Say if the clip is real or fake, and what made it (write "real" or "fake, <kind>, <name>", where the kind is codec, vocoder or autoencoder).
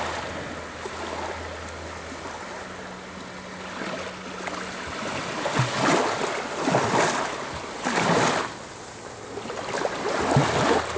real